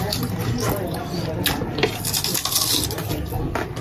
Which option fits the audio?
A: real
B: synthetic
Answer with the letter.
A